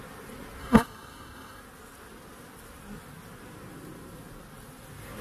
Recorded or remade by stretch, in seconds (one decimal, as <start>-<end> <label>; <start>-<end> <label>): 0.0-0.6 recorded; 0.6-1.6 remade; 1.6-5.2 recorded